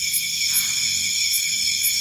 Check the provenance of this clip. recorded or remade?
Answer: recorded